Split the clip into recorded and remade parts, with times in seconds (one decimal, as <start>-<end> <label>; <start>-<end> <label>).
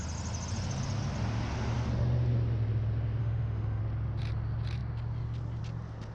0.0-3.2 recorded; 3.2-3.8 remade; 3.8-6.1 recorded